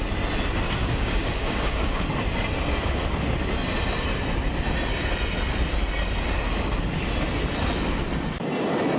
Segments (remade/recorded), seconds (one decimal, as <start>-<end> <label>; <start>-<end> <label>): 0.0-0.8 recorded; 0.8-2.0 remade; 2.0-9.0 recorded